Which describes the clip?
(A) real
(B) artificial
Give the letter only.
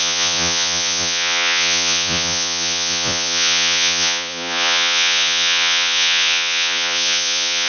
B